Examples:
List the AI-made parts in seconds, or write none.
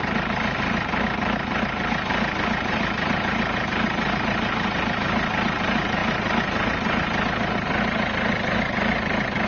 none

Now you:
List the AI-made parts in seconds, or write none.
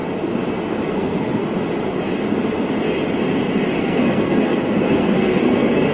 0.9-1.4 (codec, SNAC); 3.8-5.9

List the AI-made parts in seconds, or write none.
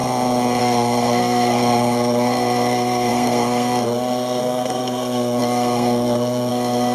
0.6-6.9 (codec, SNAC)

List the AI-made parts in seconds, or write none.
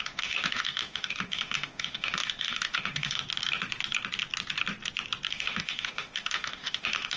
0.0-3.2 (autoencoder, DAC-VAE); 5.3-7.2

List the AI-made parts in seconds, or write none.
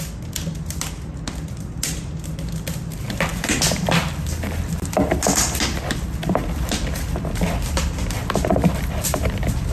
none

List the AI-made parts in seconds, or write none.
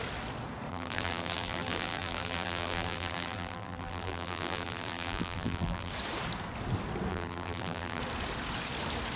0.7-5.9 (vocoder, BigVGAN v2); 7.1-8.0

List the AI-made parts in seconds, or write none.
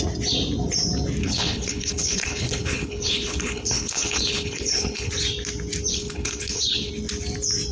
1.2-5.1 (codec, HILCodec); 5.9-6.9